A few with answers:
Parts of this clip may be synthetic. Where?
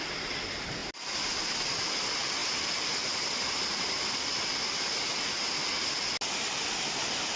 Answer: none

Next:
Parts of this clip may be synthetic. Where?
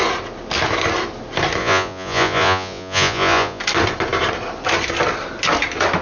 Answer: 1.6-3.6 (vocoder, Vocos)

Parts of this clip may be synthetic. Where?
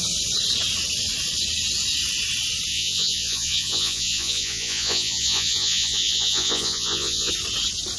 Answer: 2.7-7.3 (vocoder, Vocos)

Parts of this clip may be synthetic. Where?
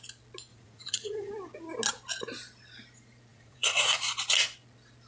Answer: 0.5-1.3 (vocoder, Vocos); 3.3-4.0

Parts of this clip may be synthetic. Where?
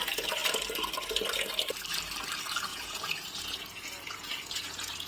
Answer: 2.7-5.1 (vocoder, Vocos)